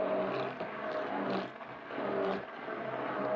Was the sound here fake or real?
real